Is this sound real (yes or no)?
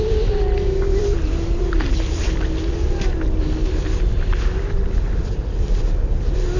yes